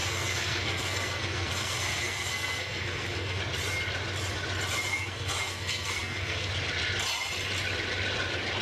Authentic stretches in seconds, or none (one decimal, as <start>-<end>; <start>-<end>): 3.4-4.9; 6.5-8.6